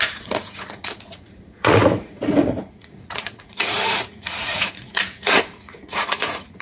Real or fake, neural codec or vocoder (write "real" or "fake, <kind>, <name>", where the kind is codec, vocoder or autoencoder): fake, vocoder, Vocos